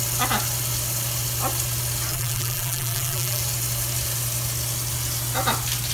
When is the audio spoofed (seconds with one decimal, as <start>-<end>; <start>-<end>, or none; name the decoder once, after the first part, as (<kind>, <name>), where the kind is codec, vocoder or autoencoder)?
2.1-3.4 (vocoder, BigVGAN v2)